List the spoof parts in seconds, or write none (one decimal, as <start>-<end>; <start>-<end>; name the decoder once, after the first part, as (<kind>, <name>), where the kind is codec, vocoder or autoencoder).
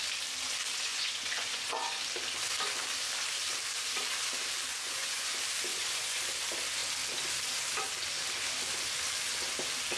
0.9-2.0 (vocoder, Vocos); 4.7-5.3; 5.7-6.2